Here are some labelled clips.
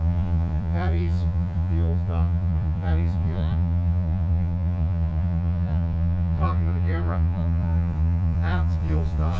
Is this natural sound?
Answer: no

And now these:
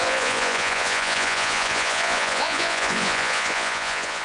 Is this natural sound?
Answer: no